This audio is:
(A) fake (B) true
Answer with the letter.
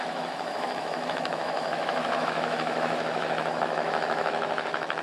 A